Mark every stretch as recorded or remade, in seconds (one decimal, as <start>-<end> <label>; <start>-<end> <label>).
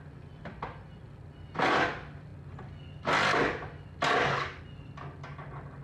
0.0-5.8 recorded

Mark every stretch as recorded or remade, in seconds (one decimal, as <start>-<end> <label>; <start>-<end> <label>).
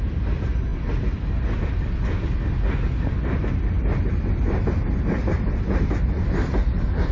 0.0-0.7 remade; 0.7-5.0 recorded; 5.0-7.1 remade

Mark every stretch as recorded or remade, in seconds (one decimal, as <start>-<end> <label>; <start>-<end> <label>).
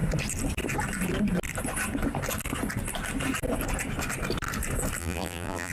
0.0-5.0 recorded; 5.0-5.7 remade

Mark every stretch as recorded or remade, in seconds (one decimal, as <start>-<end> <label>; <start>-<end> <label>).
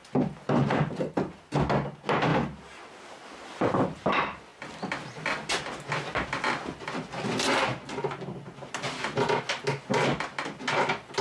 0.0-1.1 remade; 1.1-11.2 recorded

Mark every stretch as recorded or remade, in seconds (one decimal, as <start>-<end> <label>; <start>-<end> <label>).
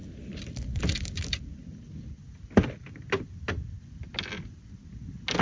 0.0-3.2 remade; 3.2-5.4 recorded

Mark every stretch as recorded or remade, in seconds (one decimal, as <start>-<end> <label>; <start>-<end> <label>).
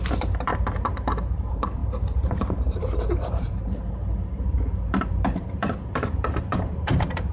0.0-7.3 remade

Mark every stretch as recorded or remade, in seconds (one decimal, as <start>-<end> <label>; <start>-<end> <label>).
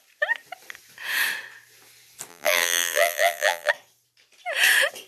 0.0-2.3 recorded; 2.3-3.7 remade; 3.7-5.1 recorded